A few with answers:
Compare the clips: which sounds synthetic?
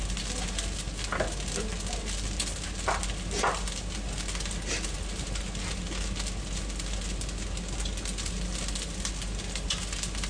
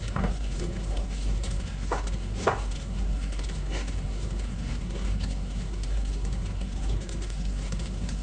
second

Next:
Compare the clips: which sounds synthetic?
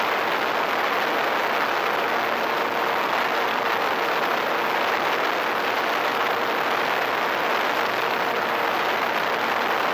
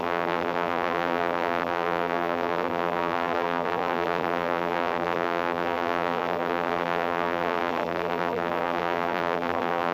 second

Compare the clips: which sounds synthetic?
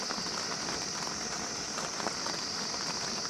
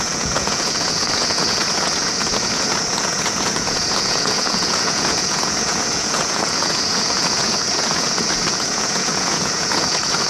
second